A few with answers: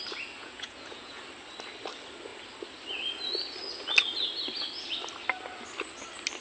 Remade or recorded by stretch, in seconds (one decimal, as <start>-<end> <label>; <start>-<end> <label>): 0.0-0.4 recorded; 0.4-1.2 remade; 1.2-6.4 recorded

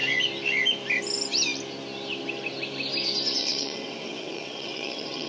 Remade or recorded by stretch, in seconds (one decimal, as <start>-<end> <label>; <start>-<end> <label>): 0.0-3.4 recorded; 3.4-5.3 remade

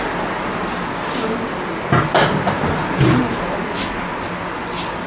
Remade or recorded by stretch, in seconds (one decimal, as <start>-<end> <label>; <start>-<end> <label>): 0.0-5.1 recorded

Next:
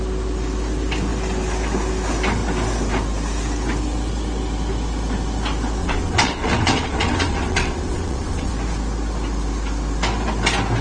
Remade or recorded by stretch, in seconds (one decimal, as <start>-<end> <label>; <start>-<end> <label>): 0.0-5.8 recorded; 5.8-8.5 remade; 8.5-10.8 recorded

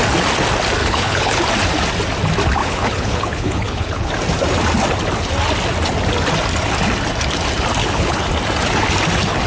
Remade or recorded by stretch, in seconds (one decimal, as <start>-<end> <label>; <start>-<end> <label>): 0.0-0.8 recorded; 0.8-1.4 remade; 1.4-2.6 recorded; 2.6-4.1 remade; 4.1-7.8 recorded; 7.8-8.3 remade; 8.3-9.5 recorded

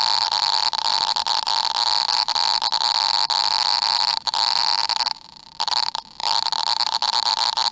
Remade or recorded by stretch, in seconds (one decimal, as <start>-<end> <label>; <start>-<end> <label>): 0.0-0.9 remade; 0.9-2.2 recorded; 2.2-6.2 remade; 6.2-7.3 recorded; 7.3-7.7 remade

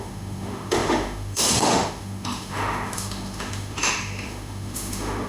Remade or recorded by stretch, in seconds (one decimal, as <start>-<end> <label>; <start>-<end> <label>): 0.0-5.3 remade